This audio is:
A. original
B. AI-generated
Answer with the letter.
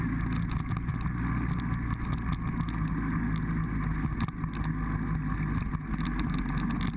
A